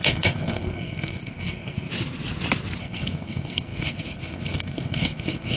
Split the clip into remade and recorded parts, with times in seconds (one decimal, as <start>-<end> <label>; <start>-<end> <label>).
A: 0.0-1.9 remade; 1.9-2.8 recorded; 2.8-5.6 remade